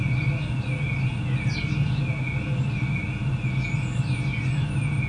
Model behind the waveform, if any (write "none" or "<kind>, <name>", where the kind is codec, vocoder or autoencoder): none